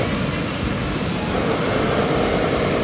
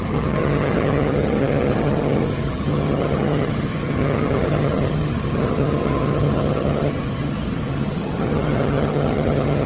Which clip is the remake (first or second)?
second